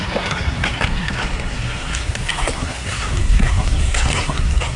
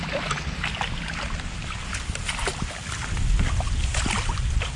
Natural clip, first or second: second